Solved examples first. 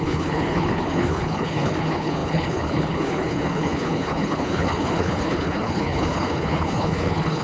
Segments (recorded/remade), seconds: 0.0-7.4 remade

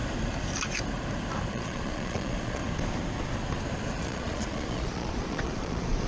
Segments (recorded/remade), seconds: 0.0-1.5 recorded; 1.5-2.6 remade; 2.6-4.0 recorded; 4.0-6.1 remade

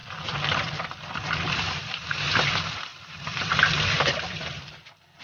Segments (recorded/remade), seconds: 0.0-2.0 remade; 2.0-2.9 recorded; 2.9-5.2 remade

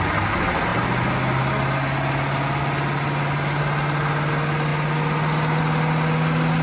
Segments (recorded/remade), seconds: 0.0-6.6 recorded

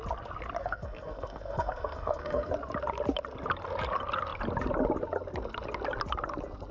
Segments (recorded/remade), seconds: 0.0-0.6 recorded; 0.6-2.5 remade; 2.5-6.7 recorded

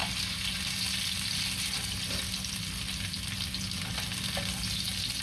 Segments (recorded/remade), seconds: 0.0-5.2 recorded

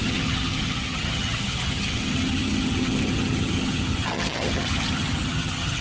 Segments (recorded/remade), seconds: 0.0-5.8 remade

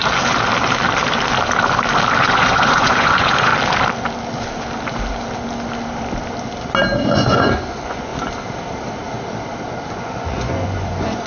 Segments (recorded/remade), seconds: 0.0-2.2 recorded; 2.2-3.5 remade; 3.5-7.0 recorded; 7.0-8.1 remade; 8.1-9.9 recorded; 9.9-11.3 remade